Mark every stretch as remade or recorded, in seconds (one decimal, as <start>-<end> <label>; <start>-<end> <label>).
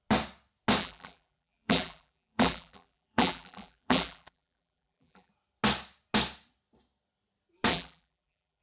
0.0-0.8 recorded; 0.8-5.3 remade; 5.3-7.7 recorded; 7.7-8.6 remade